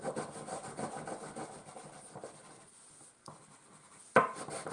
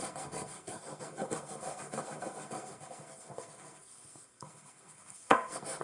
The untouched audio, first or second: first